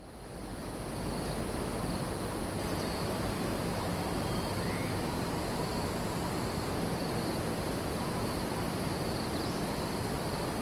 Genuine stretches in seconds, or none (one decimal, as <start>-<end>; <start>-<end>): 0.0-0.5; 1.1-10.6